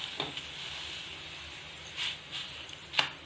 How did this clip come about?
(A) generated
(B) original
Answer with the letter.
B